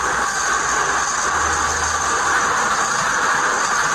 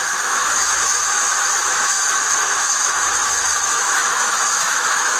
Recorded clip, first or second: first